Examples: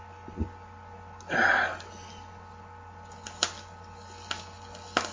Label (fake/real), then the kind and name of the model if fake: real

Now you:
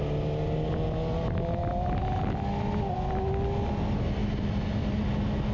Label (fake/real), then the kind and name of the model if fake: real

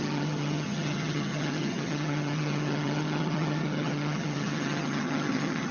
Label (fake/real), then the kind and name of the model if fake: fake, vocoder, HiFi-GAN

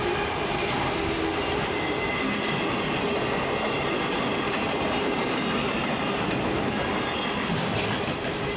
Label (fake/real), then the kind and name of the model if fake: real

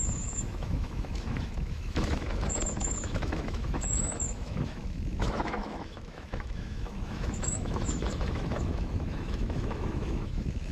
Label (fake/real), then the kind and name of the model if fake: fake, autoencoder, DAC-VAE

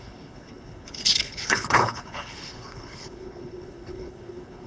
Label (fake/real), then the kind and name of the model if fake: fake, codec, HILCodec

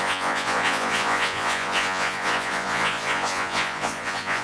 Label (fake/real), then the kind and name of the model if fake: fake, vocoder, Vocos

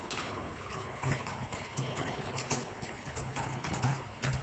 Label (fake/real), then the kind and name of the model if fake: fake, codec, HILCodec